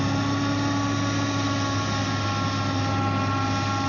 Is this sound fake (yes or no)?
no